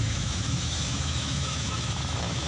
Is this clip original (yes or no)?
no